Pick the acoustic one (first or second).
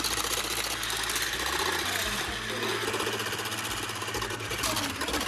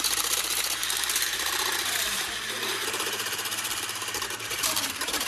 first